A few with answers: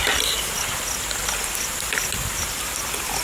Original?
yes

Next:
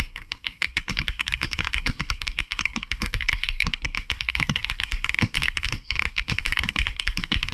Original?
no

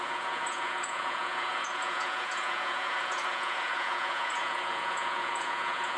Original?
no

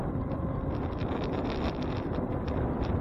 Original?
no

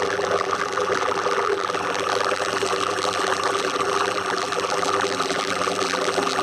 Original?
no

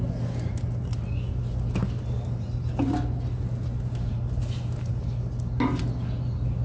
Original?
yes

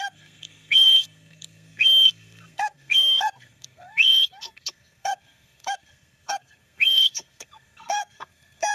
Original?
no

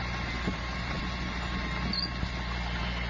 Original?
yes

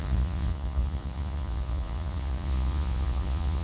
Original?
no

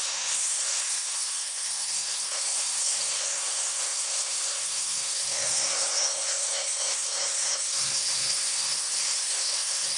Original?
no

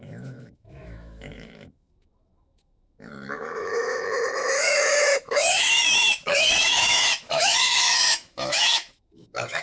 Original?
no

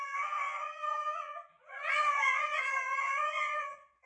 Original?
no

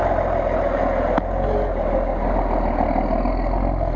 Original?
yes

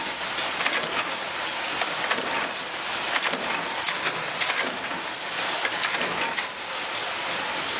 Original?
yes